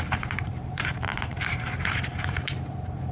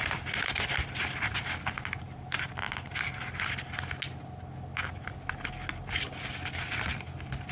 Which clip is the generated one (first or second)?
first